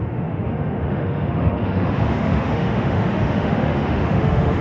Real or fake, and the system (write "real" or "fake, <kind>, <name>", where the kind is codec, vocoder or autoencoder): fake, autoencoder, DAC-VAE